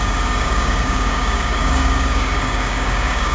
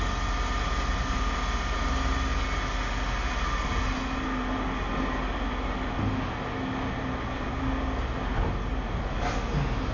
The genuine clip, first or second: second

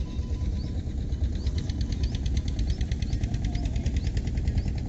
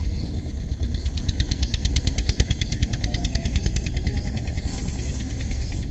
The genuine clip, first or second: first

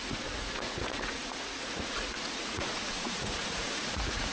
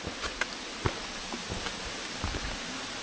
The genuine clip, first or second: second